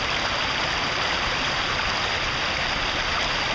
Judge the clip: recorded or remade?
recorded